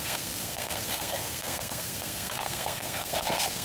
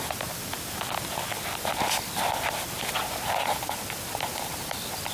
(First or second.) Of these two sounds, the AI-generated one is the first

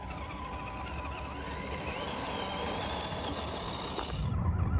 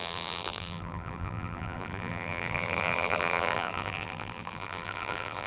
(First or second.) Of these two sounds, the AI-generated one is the second